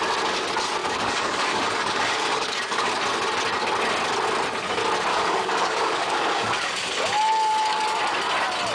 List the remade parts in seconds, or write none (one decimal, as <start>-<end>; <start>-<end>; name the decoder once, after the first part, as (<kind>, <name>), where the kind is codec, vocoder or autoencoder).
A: 0.8-2.9 (codec, DAC); 5.1-8.0